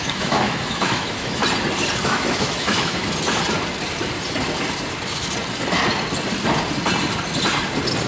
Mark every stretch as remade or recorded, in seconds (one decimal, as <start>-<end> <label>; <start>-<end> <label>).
0.0-1.4 remade; 1.4-2.0 recorded; 2.0-3.0 remade; 3.0-8.1 recorded